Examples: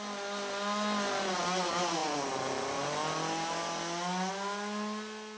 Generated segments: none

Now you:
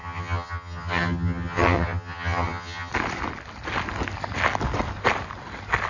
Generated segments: 0.0-2.9 (vocoder, HiFi-GAN)

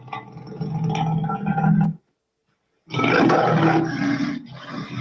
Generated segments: none

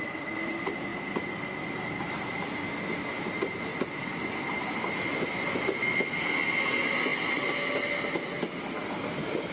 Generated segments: 3.7-5.0 (vocoder, BigVGAN v2)

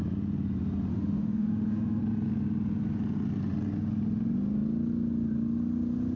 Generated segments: 0.9-2.0 (autoencoder, DAC-VAE)

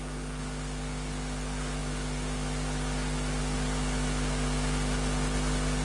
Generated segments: none